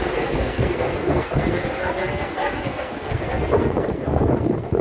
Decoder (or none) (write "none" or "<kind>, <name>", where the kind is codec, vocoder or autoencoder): codec, SNAC